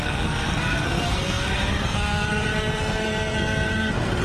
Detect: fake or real fake